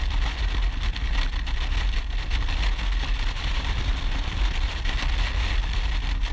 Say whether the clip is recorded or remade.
recorded